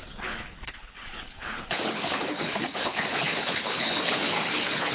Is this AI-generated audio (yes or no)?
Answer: yes